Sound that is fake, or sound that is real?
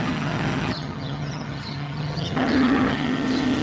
fake